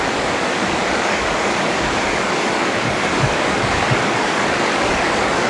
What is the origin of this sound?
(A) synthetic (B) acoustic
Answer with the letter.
A